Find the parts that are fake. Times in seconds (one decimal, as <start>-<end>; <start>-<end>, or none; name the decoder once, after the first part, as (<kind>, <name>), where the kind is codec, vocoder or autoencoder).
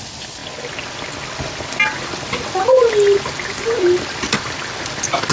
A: none